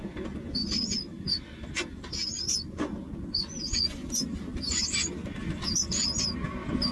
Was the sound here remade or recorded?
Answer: recorded